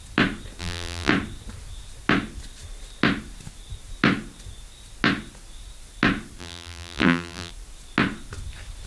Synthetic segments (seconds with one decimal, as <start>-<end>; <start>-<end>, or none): 0.6-1.1; 6.4-7.5